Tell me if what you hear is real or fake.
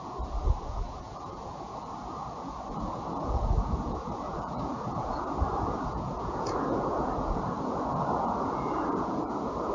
fake